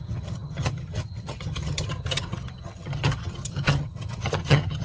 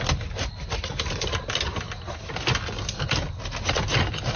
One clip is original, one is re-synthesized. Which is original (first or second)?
second